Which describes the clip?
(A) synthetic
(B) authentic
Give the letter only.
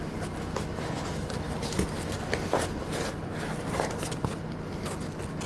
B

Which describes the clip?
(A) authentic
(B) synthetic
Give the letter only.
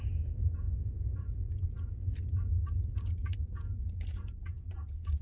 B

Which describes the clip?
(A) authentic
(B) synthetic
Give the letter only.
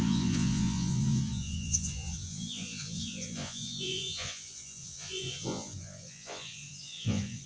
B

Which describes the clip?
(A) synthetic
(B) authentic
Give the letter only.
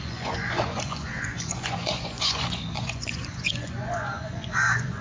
A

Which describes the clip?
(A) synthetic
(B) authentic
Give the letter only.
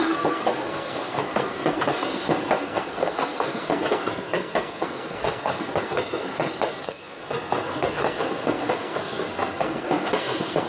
A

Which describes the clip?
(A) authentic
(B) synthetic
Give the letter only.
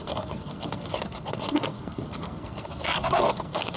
B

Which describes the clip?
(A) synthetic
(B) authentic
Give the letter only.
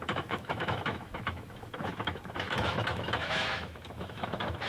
A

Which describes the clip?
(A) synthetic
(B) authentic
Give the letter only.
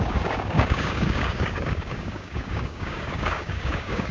A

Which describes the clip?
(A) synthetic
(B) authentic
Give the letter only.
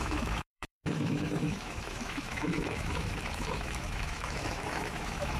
A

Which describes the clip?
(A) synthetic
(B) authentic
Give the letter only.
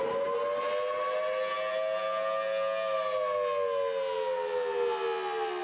B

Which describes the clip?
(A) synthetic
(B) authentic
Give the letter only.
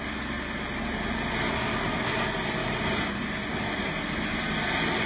B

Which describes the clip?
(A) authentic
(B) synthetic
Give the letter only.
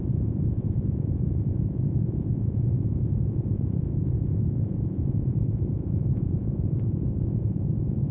B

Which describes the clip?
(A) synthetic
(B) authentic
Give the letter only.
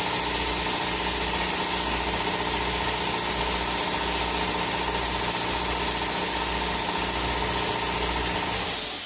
B